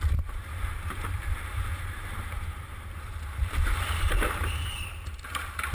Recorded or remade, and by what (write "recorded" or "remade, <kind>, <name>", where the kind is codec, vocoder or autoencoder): remade, vocoder, BigVGAN v2